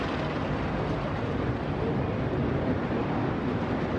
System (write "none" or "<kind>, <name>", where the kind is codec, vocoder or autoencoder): none